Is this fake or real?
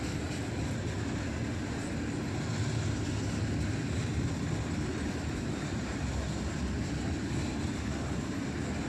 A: real